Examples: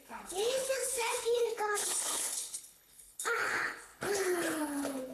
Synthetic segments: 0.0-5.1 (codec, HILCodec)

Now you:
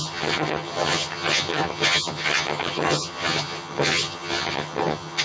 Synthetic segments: 0.0-5.2 (vocoder, HiFi-GAN)

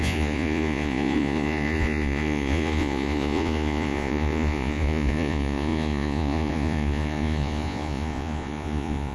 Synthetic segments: 0.0-9.1 (vocoder, Vocos)

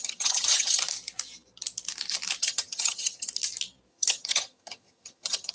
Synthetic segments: 0.0-0.8 (vocoder, HiFi-GAN); 2.4-3.3; 3.9-5.5

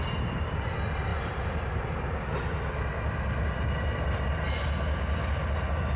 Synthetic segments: none